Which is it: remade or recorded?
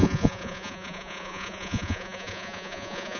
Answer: remade